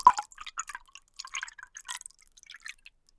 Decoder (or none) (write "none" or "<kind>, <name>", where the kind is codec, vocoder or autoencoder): none